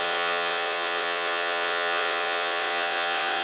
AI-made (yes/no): yes